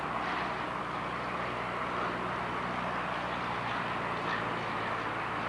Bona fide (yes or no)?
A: yes